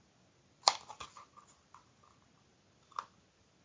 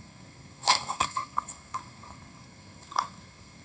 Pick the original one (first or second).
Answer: first